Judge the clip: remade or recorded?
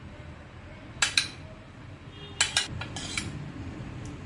recorded